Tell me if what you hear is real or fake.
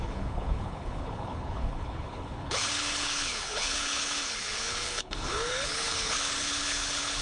fake